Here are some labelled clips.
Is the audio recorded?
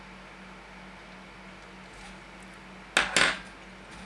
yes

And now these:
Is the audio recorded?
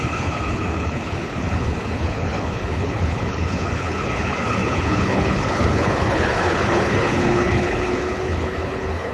no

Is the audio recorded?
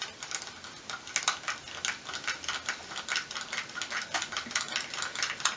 yes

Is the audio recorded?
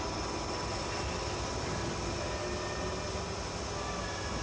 yes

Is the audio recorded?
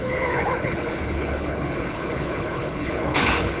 no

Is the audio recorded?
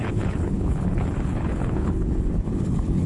no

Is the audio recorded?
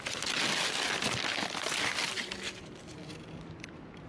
yes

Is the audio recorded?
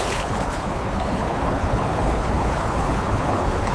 no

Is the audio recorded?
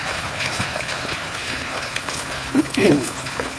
no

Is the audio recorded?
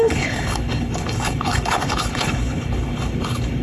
no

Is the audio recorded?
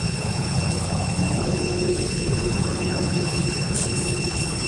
no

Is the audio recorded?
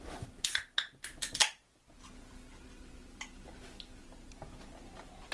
yes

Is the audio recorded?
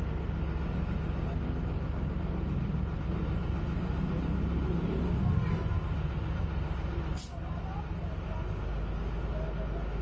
yes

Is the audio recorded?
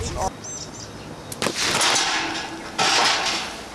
yes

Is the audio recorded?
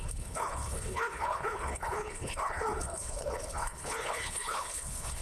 no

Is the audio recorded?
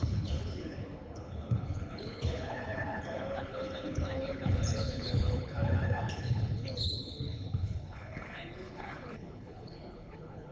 no